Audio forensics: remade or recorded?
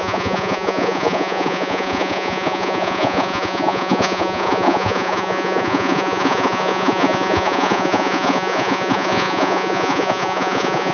remade